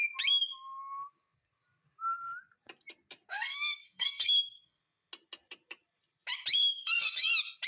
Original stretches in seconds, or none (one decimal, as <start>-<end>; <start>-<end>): 0.0-3.3; 4.8-6.6; 7.3-7.7